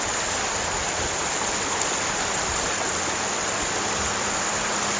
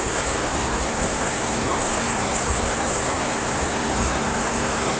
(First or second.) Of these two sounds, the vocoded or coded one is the second